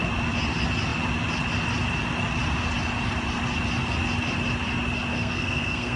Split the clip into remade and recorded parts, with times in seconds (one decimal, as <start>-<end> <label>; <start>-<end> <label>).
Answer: 0.0-5.1 recorded; 5.1-6.0 remade